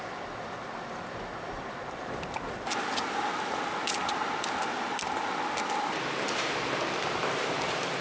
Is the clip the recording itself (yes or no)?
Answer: no